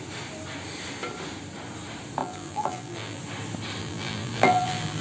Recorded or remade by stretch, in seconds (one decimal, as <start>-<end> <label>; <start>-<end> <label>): 0.0-2.2 recorded; 2.2-3.2 remade; 3.2-3.8 recorded; 3.8-5.0 remade